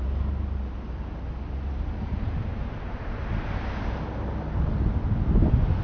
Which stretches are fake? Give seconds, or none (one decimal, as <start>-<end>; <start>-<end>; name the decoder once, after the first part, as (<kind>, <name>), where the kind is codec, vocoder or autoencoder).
2.5-3.2 (vocoder, BigVGAN v2)